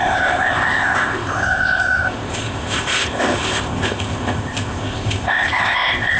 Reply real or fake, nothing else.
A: fake